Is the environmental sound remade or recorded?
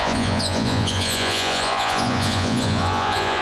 remade